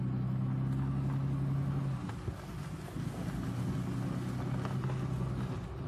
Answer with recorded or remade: recorded